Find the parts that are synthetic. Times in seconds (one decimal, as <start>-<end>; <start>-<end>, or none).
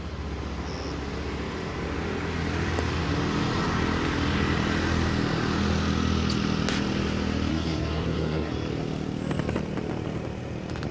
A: 7.5-8.5